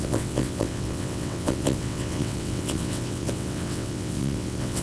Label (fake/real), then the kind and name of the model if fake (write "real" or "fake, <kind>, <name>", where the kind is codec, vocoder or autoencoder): fake, vocoder, WaveNeXt